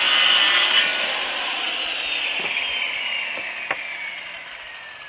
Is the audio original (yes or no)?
yes